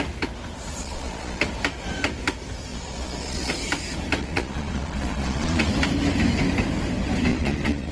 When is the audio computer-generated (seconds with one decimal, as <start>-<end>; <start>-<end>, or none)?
0.8-1.4; 2.7-3.5; 4.2-5.7; 7.3-7.9